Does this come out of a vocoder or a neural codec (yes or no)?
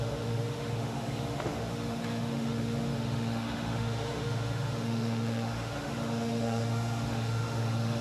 yes